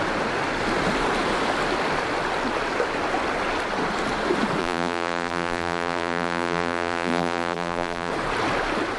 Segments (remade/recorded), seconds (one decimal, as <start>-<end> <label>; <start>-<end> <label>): 0.0-4.6 recorded; 4.6-8.1 remade; 8.1-9.0 recorded